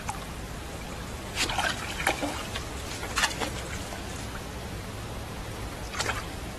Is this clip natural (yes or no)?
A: yes